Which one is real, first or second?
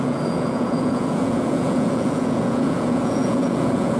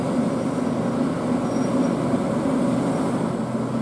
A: second